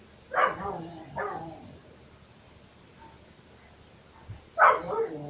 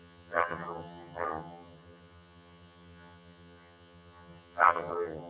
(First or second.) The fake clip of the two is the second